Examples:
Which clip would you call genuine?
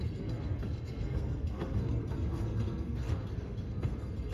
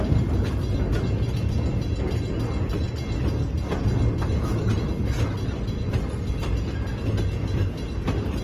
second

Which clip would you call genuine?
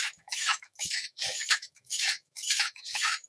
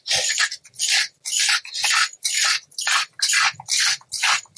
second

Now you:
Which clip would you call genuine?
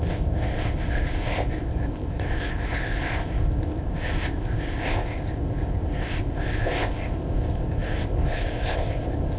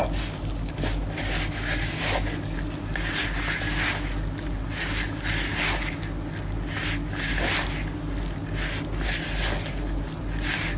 second